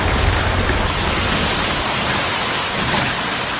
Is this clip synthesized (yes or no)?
no